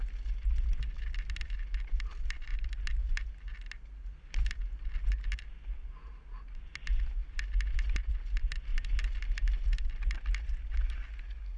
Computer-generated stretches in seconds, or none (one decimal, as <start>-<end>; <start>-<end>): none